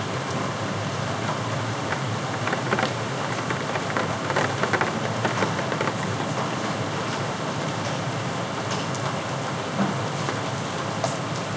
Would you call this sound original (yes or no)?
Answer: yes